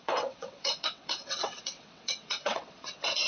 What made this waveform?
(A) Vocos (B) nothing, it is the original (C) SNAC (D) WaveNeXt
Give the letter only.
D